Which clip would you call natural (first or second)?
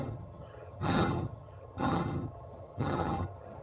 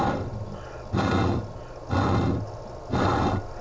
second